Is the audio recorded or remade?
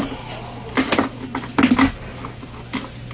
recorded